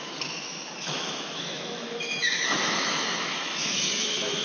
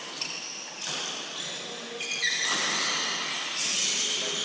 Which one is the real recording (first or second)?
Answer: second